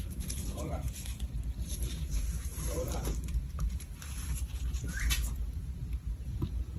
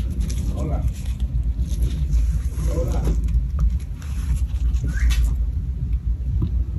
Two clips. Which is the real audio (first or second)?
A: second